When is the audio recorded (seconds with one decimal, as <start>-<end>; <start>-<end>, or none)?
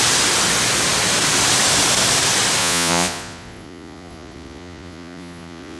0.0-2.6